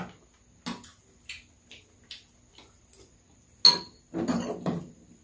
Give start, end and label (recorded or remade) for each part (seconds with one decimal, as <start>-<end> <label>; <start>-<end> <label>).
0.0-5.2 recorded